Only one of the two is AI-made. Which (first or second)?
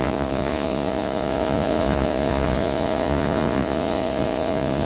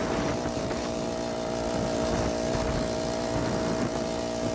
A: first